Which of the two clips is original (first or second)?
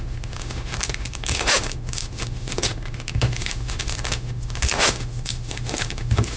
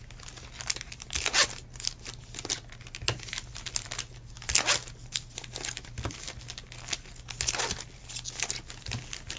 second